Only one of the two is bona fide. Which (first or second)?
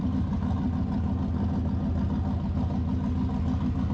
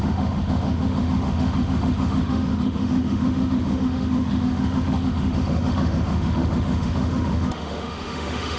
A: first